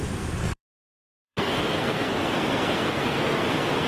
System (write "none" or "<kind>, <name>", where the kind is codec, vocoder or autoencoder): codec, SNAC